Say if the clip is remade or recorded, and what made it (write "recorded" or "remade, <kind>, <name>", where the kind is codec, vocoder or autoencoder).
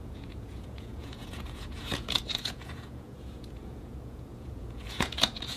remade, vocoder, Vocos